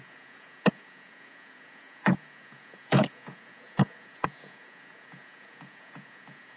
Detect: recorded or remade remade